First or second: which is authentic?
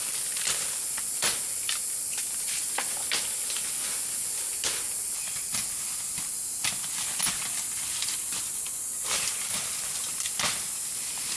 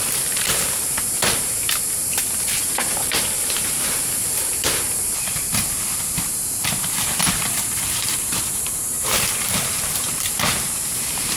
first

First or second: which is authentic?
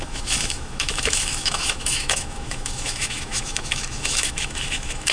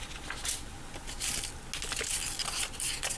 second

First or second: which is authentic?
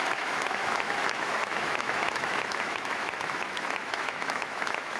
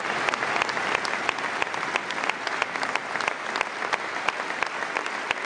second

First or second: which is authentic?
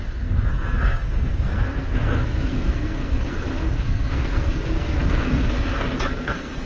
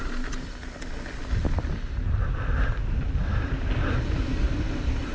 second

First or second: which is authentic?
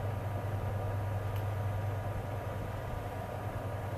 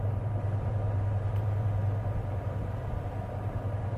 first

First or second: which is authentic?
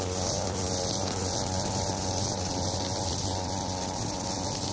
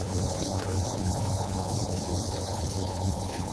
first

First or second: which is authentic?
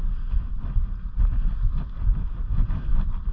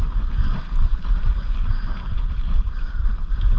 first